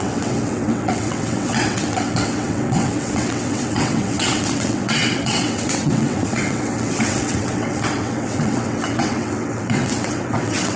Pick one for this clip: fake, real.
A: fake